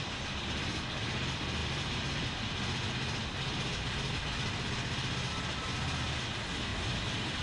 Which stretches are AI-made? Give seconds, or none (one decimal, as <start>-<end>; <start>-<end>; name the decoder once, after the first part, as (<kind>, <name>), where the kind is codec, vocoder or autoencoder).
none